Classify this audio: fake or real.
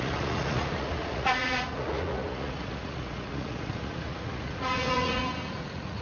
fake